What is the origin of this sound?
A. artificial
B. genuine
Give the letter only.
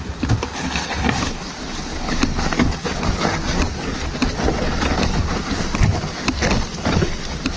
B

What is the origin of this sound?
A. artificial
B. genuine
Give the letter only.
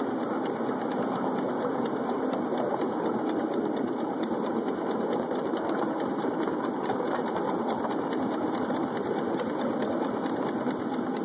B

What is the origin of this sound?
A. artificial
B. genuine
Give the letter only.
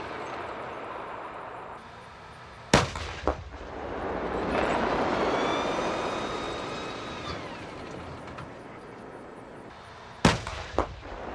B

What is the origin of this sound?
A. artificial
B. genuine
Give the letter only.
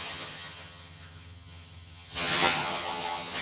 A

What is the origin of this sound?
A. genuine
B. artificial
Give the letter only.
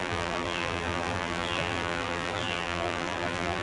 B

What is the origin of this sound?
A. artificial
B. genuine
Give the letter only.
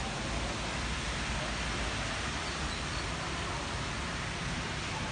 B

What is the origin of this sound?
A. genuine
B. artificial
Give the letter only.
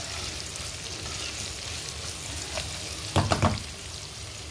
A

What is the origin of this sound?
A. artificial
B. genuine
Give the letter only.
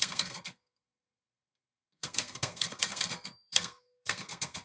A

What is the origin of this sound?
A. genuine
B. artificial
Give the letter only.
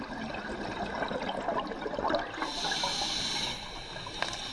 A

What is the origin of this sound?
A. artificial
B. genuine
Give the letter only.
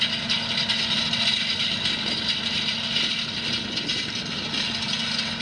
B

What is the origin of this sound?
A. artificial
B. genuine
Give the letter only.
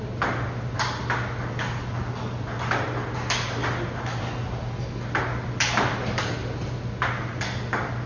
B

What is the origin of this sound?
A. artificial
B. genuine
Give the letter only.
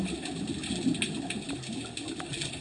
B